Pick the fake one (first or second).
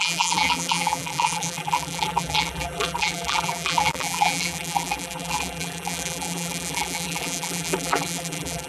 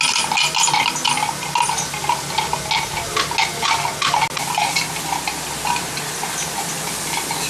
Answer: first